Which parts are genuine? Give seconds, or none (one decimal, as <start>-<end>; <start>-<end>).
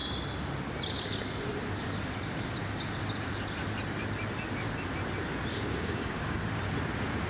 0.0-5.5; 6.4-7.3